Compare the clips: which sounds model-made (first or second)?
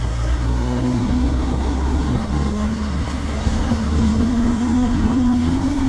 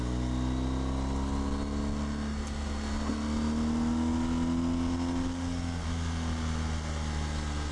first